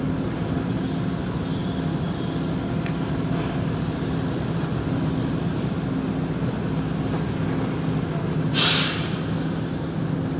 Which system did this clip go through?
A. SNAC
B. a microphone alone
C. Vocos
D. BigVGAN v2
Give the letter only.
B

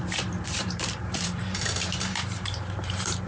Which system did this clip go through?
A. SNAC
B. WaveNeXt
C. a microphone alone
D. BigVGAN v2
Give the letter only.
D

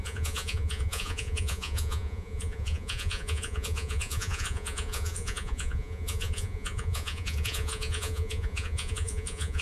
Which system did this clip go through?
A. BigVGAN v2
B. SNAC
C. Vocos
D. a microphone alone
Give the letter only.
C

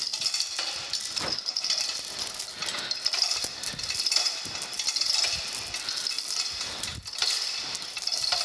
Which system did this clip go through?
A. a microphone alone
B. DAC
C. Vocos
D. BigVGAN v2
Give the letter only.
A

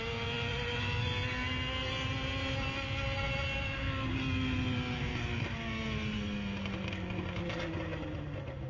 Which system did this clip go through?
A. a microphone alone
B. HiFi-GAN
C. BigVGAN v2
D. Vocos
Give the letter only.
A